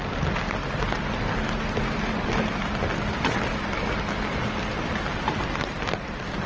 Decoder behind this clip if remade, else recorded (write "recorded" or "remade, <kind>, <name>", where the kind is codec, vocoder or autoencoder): recorded